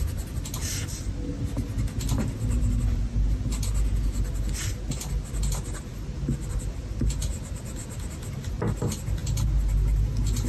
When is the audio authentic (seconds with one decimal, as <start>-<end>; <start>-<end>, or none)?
0.0-10.5